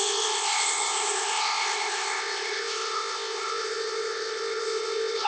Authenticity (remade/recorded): remade